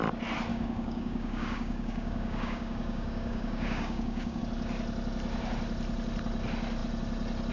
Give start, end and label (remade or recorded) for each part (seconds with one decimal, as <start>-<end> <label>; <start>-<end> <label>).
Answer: 0.0-0.5 recorded; 0.5-4.4 remade; 4.4-7.5 recorded